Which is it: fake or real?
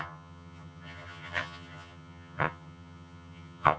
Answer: fake